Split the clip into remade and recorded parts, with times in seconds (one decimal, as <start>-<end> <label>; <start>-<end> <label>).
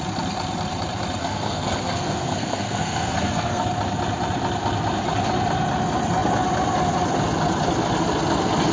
0.0-1.2 recorded; 1.2-3.6 remade; 3.6-8.7 recorded